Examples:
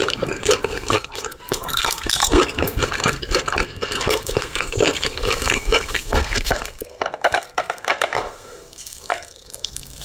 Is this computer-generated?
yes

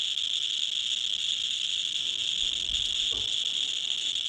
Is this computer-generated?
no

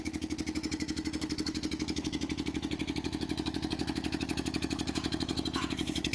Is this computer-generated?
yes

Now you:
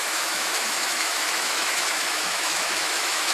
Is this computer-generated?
yes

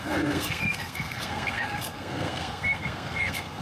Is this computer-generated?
yes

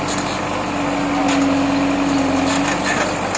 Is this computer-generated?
no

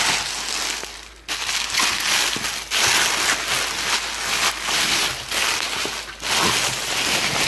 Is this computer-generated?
no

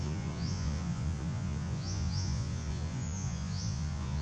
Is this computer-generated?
yes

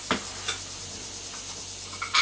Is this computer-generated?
no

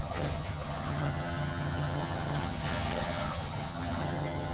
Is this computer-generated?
yes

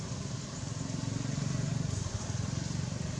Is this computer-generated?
yes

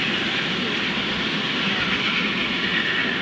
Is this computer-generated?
no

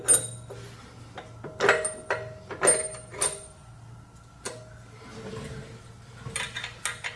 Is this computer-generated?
no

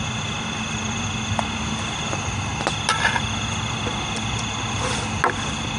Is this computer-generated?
no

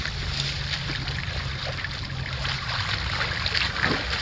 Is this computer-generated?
no